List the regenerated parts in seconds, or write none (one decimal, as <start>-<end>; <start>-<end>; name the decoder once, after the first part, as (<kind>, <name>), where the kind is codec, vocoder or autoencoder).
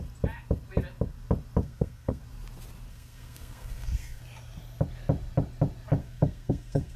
1.6-2.2 (codec, SNAC); 2.9-4.2; 6.0-7.0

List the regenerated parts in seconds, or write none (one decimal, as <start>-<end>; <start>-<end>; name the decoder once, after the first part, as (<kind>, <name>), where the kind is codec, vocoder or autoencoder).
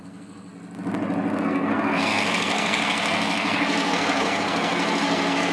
0.0-0.5 (codec, SNAC); 1.4-5.5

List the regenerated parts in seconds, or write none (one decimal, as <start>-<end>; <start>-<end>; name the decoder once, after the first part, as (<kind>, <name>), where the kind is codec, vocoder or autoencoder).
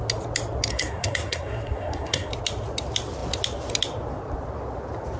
0.7-2.3 (codec, SNAC)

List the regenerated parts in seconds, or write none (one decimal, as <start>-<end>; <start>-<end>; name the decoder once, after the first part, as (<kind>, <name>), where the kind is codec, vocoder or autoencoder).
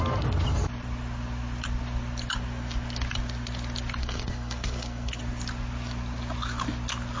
4.0-5.2 (codec, SNAC)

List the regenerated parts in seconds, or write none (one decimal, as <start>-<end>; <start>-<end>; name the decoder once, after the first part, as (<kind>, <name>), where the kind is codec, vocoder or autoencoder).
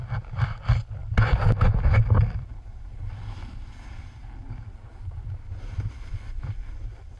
none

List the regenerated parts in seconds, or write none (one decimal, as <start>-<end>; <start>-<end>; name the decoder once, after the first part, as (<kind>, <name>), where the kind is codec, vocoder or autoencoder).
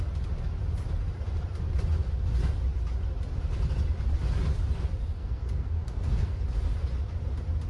5.1-6.4 (codec, SNAC)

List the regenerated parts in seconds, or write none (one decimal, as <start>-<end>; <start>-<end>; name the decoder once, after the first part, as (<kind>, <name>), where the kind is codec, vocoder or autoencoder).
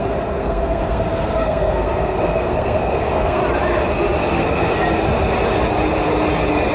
0.0-3.4 (codec, SNAC); 4.3-4.7